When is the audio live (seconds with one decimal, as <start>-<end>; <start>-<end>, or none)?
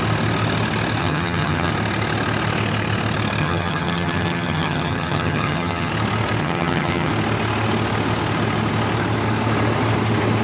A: 0.0-1.0; 1.7-3.4; 5.9-6.4; 7.1-10.4